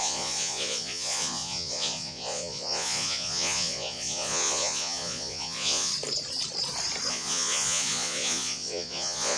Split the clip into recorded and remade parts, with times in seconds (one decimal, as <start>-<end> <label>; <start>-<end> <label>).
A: 0.0-5.9 remade; 5.9-7.1 recorded; 7.1-9.4 remade

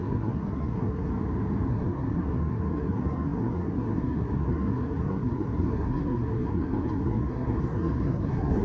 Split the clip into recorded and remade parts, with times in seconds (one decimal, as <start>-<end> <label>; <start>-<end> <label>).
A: 0.0-1.1 remade; 1.1-1.7 recorded; 1.7-8.6 remade

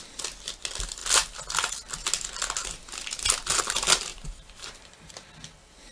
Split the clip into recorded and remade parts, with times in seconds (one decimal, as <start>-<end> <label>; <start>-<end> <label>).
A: 0.0-4.1 recorded; 4.1-5.1 remade; 5.1-5.9 recorded

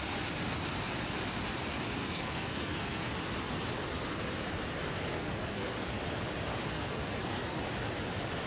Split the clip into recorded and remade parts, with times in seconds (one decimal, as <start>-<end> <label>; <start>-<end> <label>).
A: 0.0-2.0 recorded; 2.0-3.1 remade; 3.1-5.1 recorded; 5.1-6.0 remade; 6.0-6.7 recorded; 6.7-7.6 remade; 7.6-8.5 recorded

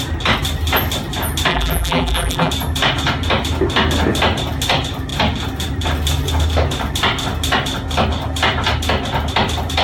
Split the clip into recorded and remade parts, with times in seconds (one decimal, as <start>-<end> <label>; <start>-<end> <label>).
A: 0.0-1.5 recorded; 1.5-2.5 remade; 2.5-9.8 recorded

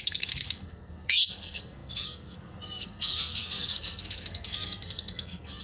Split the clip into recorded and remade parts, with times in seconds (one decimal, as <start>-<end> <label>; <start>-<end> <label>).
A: 0.0-5.6 remade

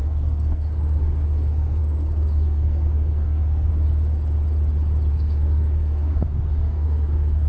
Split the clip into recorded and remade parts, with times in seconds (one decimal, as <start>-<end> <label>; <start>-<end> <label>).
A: 0.0-3.7 remade; 3.7-5.1 recorded; 5.1-7.5 remade

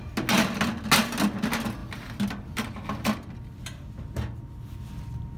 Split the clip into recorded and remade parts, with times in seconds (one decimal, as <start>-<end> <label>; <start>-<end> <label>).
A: 0.0-5.4 recorded